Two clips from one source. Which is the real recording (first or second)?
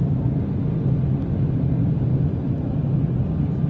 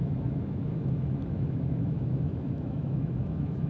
first